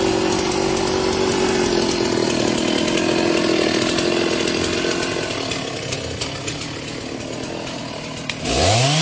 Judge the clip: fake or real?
real